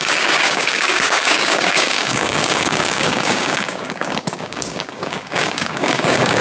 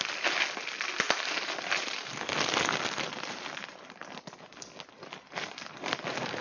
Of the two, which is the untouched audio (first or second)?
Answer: second